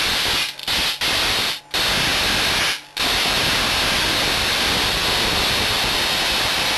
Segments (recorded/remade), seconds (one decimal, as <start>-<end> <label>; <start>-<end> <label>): 0.0-6.8 recorded